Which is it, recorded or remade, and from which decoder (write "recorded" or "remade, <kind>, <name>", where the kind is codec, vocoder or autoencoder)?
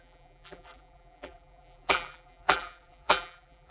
remade, vocoder, BigVGAN v2